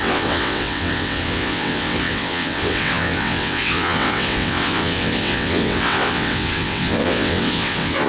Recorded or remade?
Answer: remade